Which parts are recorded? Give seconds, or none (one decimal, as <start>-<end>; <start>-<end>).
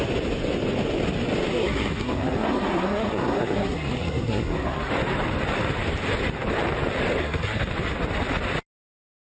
0.0-1.5; 4.9-7.2; 7.7-9.4